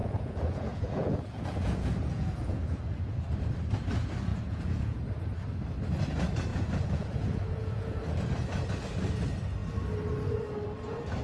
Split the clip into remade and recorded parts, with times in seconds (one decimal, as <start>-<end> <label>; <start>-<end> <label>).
0.0-3.2 remade; 3.2-4.3 recorded; 4.3-5.0 remade; 5.0-6.5 recorded; 6.5-8.0 remade; 8.0-11.2 recorded